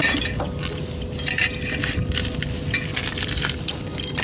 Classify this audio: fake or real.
real